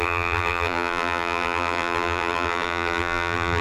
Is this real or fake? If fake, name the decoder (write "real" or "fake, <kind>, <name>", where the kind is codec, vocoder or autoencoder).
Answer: fake, vocoder, BigVGAN v2